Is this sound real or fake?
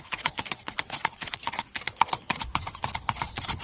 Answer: fake